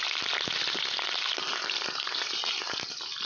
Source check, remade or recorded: recorded